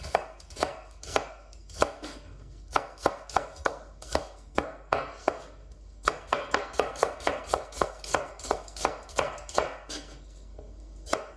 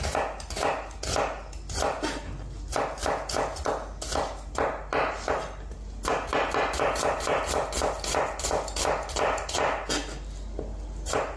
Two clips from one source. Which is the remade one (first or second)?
first